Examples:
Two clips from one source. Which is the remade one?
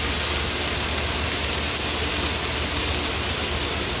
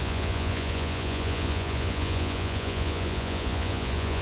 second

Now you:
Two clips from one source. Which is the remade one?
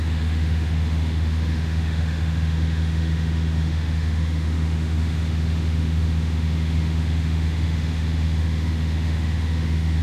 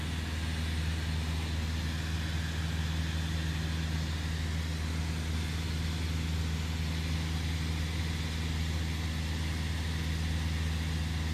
first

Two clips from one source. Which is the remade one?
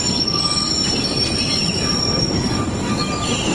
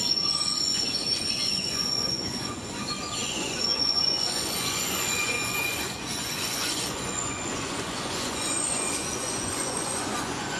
second